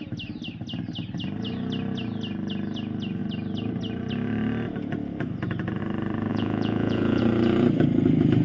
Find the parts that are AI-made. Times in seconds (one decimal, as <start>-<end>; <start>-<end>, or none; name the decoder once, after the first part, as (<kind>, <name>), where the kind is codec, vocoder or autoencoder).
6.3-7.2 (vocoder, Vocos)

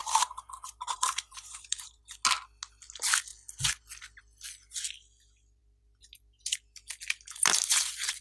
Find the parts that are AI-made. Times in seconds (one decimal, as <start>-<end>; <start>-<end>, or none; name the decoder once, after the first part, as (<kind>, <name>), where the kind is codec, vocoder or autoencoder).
0.0-2.0 (vocoder, BigVGAN v2)

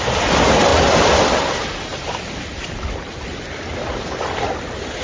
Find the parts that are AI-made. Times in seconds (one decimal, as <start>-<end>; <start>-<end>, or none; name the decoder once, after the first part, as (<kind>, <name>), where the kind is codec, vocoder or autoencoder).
none

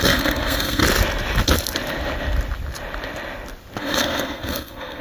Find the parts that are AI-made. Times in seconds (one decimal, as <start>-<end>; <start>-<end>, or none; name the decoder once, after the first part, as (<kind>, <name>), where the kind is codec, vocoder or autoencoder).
0.0-0.8 (codec, SNAC); 3.8-5.0

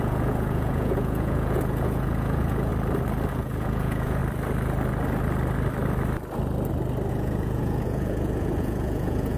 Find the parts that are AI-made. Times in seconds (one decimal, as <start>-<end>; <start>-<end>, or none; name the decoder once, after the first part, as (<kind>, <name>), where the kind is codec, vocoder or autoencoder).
0.0-2.7 (vocoder, Vocos); 3.3-4.2; 7.1-9.4